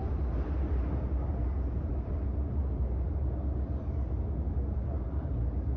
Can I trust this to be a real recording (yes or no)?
yes